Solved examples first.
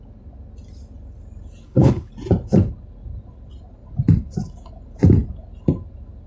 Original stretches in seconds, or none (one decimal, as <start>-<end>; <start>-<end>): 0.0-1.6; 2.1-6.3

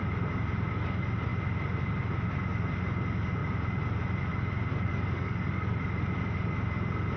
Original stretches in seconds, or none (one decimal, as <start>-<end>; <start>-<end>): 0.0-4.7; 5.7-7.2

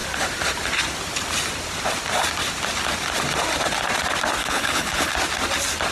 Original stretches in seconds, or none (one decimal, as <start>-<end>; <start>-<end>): 0.0-4.4; 5.1-5.9

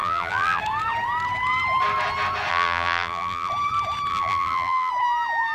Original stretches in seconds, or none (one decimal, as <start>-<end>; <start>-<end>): 0.6-2.5; 3.5-4.1; 4.9-5.5

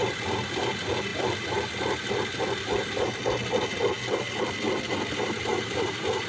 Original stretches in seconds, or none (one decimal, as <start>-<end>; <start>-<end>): 0.0-6.3

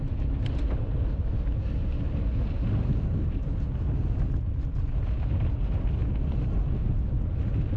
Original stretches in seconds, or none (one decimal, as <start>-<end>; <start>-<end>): 0.0-7.8

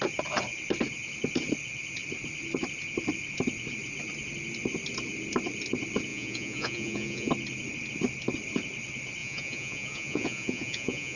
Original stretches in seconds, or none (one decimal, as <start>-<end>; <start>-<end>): 0.0-6.1; 7.3-9.2